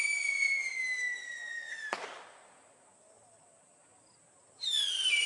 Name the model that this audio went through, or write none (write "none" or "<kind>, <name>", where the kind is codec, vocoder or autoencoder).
none